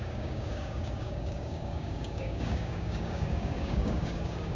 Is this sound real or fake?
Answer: fake